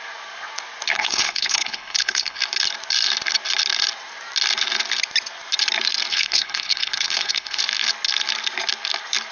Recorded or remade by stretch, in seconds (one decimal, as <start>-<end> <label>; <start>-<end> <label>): 0.0-0.9 recorded; 0.9-2.4 remade; 2.4-6.1 recorded; 6.1-7.6 remade; 7.6-9.3 recorded